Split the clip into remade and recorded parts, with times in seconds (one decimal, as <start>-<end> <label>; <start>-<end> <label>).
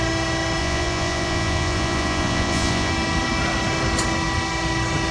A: 0.0-0.6 recorded; 0.6-2.9 remade; 2.9-5.1 recorded